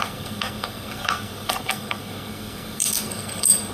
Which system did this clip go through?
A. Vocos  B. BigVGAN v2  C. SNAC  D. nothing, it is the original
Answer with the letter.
C